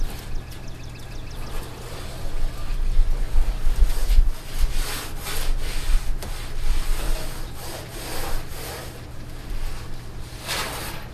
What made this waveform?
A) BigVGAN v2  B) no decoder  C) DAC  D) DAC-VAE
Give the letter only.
B